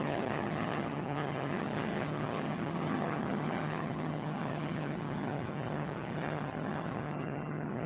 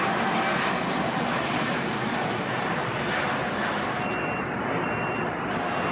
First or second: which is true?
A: second